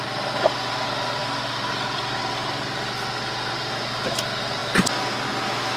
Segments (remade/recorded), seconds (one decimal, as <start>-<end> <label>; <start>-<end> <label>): 0.0-5.8 recorded